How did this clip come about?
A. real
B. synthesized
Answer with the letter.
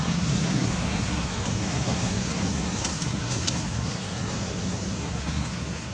B